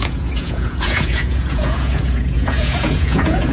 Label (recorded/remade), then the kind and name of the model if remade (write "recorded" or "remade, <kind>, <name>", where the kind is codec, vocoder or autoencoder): remade, vocoder, Vocos